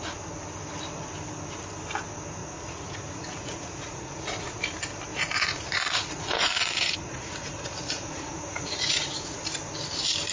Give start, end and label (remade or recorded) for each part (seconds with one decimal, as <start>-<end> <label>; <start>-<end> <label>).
0.0-2.4 recorded; 2.4-4.6 remade; 4.6-5.1 recorded; 5.1-9.4 remade; 9.4-10.3 recorded